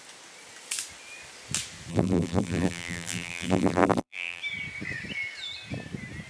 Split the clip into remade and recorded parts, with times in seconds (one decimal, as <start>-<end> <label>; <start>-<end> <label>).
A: 0.0-1.9 recorded; 1.9-4.4 remade; 4.4-6.3 recorded